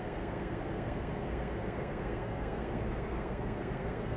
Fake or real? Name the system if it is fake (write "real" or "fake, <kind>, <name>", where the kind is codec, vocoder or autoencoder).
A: fake, codec, SNAC